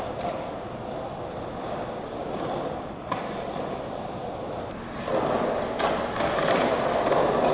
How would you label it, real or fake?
real